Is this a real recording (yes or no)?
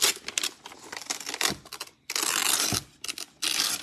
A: yes